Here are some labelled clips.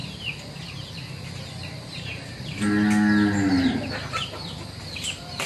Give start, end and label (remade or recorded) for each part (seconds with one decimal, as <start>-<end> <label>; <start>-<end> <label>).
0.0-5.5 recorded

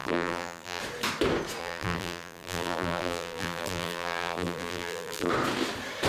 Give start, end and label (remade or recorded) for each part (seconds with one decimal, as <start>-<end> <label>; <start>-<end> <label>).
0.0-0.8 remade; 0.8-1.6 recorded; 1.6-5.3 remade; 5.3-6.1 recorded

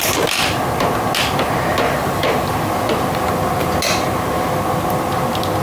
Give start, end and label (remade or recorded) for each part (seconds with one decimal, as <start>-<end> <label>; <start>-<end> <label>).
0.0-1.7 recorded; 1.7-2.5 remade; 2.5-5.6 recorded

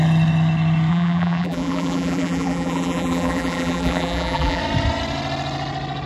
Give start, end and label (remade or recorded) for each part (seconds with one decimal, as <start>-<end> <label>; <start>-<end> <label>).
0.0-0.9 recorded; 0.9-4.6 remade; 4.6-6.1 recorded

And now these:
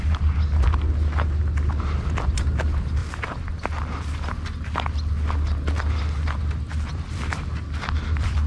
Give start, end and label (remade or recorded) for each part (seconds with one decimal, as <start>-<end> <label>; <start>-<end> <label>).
0.0-3.0 recorded; 3.0-3.6 remade; 3.6-6.9 recorded; 6.9-8.5 remade